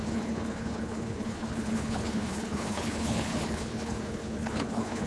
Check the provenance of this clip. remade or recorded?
remade